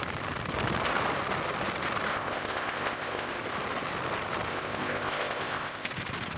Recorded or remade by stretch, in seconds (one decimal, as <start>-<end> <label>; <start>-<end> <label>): 0.0-2.1 recorded; 2.1-3.3 remade; 3.3-4.5 recorded; 4.5-5.9 remade; 5.9-6.4 recorded